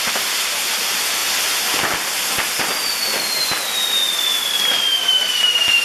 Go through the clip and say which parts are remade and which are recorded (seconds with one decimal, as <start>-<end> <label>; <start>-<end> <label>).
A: 0.0-1.2 remade; 1.2-4.7 recorded; 4.7-5.8 remade